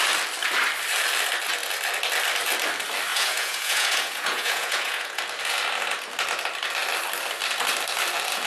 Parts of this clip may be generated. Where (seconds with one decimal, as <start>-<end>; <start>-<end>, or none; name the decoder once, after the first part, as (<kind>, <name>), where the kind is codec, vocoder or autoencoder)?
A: 3.1-5.2 (vocoder, Vocos)